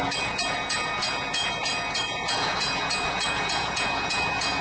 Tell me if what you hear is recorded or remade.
remade